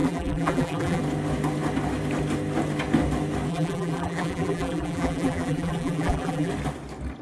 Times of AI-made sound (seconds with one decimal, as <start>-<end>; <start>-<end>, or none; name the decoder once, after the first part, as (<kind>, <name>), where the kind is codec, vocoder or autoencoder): 0.0-1.0 (vocoder, BigVGAN v2); 3.5-6.5